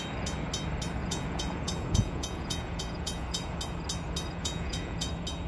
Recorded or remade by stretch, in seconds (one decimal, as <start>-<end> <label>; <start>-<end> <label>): 0.0-1.0 recorded; 1.0-3.6 remade; 3.6-4.4 recorded; 4.4-5.1 remade; 5.1-5.5 recorded

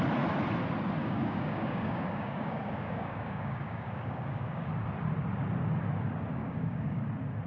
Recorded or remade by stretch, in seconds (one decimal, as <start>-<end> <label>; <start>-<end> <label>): 0.0-1.0 recorded; 1.0-4.7 remade; 4.7-6.4 recorded; 6.4-7.0 remade; 7.0-7.5 recorded